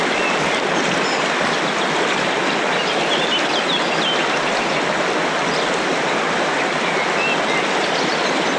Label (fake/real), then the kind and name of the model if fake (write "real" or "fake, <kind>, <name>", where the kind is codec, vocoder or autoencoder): real